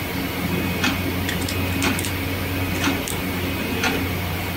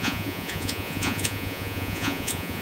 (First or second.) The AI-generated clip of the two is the second